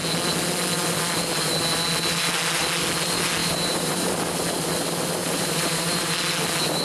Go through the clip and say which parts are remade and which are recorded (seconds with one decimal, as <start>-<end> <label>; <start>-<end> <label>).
0.0-3.4 recorded; 3.4-3.9 remade; 3.9-5.2 recorded; 5.2-6.1 remade; 6.1-6.8 recorded